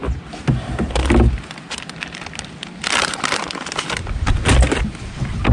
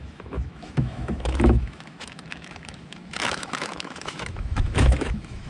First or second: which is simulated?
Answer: second